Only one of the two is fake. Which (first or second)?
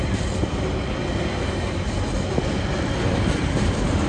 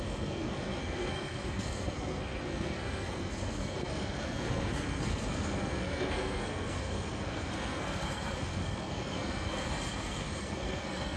second